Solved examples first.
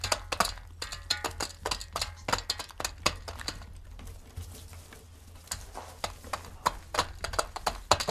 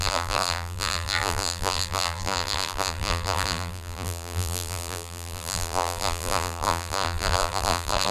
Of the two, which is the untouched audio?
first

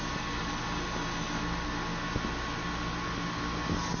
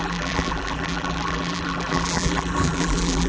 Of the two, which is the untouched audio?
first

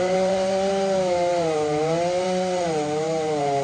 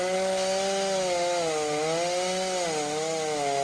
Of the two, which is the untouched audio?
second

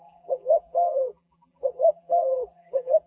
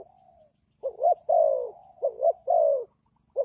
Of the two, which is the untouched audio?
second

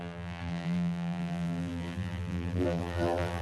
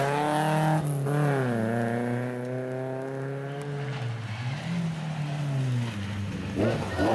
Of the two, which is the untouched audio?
second